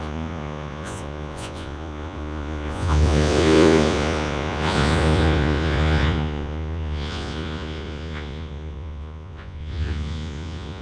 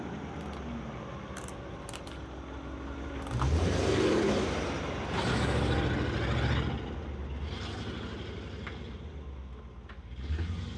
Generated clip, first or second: first